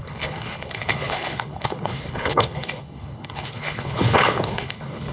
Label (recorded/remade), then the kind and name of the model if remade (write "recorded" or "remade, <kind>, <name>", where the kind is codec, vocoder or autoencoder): remade, codec, HILCodec